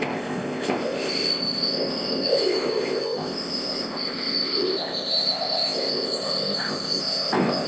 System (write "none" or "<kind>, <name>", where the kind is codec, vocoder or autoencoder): codec, ZipCodec